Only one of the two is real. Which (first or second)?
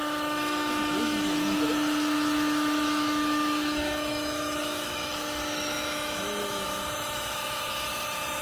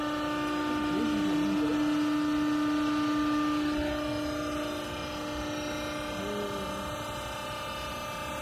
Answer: second